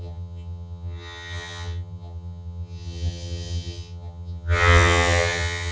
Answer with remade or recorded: remade